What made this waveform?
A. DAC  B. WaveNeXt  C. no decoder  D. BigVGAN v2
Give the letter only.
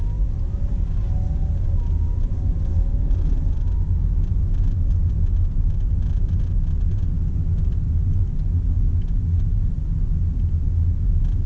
C